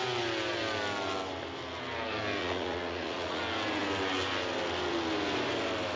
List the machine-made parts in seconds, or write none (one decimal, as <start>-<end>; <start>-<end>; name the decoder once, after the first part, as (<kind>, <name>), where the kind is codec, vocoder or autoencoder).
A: 2.4-3.4 (vocoder, Vocos)